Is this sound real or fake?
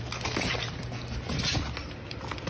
real